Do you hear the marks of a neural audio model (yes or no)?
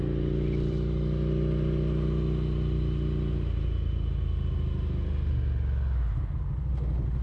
no